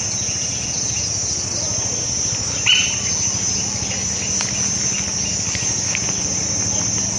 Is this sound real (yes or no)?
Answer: yes